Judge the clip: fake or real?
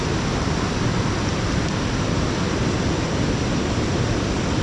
real